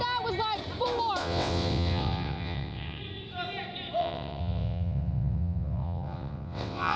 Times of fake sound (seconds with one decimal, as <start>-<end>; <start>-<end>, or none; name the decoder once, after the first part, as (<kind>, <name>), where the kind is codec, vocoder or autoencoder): 1.2-3.0 (vocoder, WaveNeXt); 4.0-7.0

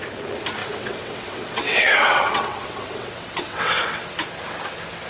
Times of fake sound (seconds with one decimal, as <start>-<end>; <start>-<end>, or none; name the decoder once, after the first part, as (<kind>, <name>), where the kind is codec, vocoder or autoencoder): 0.6-3.7 (vocoder, WaveNeXt)

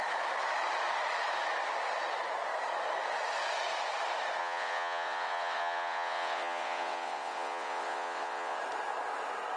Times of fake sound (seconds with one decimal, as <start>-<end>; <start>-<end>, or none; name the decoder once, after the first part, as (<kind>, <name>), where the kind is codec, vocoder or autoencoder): 4.4-8.6 (vocoder, WaveNeXt)

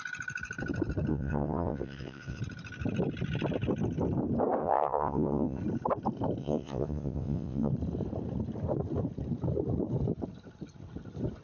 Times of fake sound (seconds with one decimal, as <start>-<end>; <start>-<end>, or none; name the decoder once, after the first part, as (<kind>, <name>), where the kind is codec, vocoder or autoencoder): 1.1-2.4 (vocoder, WaveNeXt); 4.6-5.6; 6.4-7.7